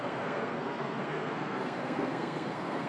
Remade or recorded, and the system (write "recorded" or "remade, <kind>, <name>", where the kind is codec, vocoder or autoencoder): remade, codec, SNAC